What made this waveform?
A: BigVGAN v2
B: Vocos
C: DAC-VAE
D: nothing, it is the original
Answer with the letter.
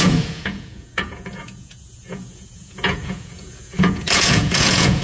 B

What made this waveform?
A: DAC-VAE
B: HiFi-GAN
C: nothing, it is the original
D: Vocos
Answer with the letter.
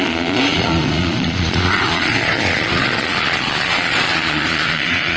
D